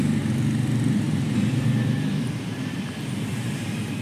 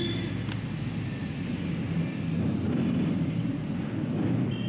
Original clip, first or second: second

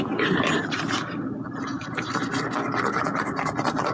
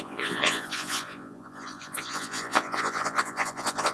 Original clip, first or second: first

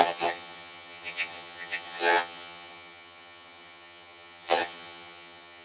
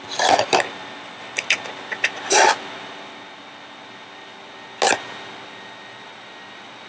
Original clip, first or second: second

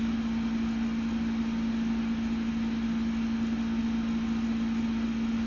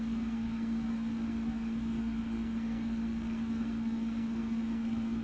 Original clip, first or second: first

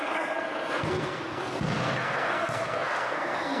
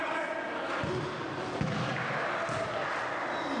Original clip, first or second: second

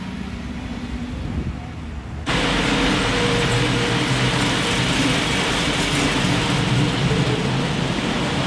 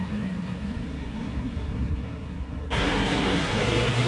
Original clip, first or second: first